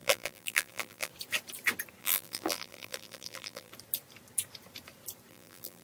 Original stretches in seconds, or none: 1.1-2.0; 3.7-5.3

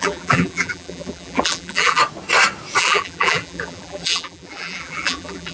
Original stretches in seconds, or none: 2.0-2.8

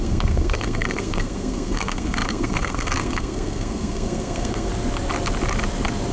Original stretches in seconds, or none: 4.7-6.1

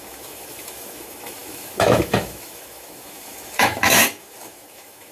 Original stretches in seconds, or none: none